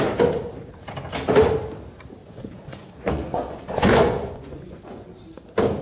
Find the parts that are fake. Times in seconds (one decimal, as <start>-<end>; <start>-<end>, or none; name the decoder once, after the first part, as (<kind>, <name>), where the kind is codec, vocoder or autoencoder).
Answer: 2.2-5.1 (vocoder, Vocos)